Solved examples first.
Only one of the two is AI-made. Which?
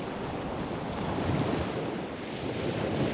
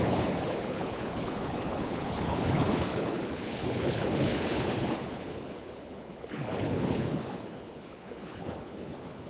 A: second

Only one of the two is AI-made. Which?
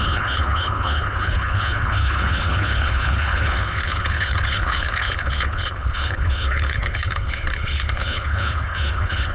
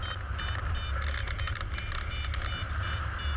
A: first